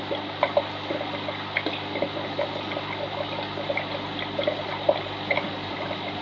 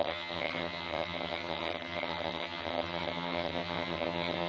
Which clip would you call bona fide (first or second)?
first